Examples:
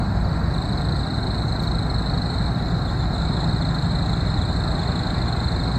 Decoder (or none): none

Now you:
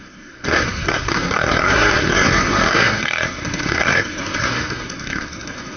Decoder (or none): codec, SNAC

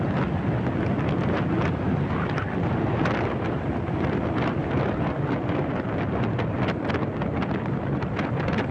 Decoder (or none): none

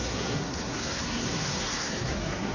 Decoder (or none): codec, SNAC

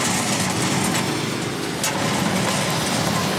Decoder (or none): none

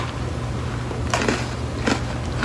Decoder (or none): none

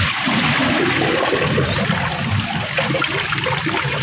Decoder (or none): none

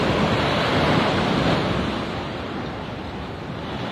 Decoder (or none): none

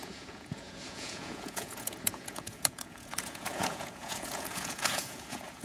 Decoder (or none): vocoder, Vocos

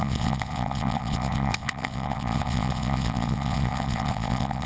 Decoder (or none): vocoder, WaveNeXt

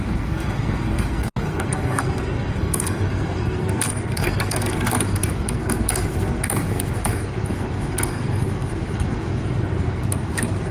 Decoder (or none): codec, SNAC